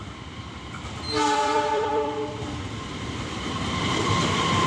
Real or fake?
fake